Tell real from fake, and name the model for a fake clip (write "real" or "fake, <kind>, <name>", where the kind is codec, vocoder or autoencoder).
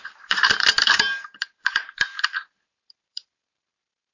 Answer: fake, vocoder, BigVGAN v2